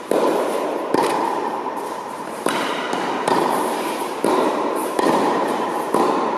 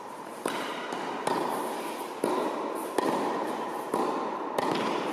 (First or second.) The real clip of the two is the second